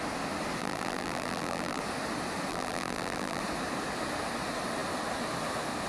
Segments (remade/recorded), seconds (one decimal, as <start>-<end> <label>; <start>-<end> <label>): 0.0-0.6 recorded; 0.6-1.8 remade; 1.8-2.5 recorded; 2.5-3.4 remade; 3.4-5.9 recorded